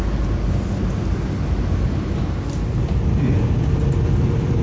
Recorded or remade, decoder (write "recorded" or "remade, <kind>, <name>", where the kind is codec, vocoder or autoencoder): recorded